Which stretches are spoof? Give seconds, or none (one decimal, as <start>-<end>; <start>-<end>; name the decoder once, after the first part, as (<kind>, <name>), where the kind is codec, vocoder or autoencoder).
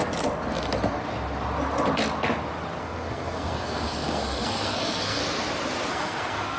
2.8-5.2 (codec, SNAC); 5.9-6.6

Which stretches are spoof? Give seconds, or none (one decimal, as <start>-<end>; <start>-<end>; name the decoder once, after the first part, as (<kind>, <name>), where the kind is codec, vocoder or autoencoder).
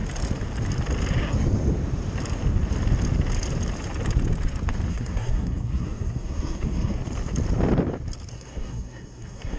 4.9-7.0 (codec, SNAC); 8.3-9.6